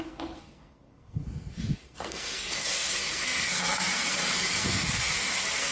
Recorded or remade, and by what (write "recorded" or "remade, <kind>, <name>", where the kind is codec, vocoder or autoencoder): remade, codec, SNAC